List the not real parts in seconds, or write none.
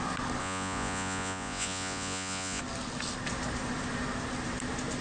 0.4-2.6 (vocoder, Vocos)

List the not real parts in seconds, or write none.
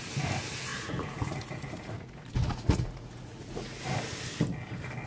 0.7-3.8 (vocoder, Vocos)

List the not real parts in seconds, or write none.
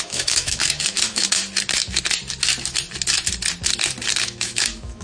0.0-1.4 (autoencoder, DAC-VAE); 4.2-5.0